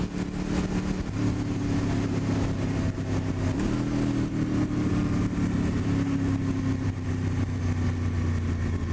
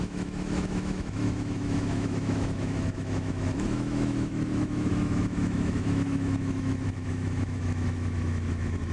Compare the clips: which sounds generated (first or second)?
second